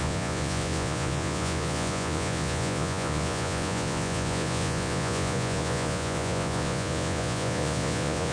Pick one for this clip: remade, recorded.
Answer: remade